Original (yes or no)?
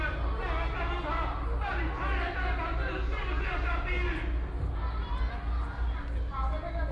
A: yes